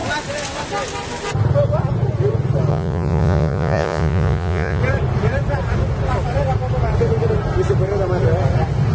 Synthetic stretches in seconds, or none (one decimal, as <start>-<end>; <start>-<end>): 2.7-4.8